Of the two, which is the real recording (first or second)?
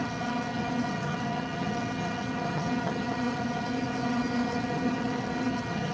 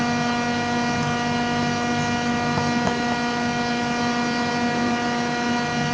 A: second